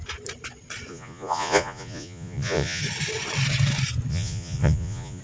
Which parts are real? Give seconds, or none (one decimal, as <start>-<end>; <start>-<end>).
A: 0.0-0.9; 2.8-4.1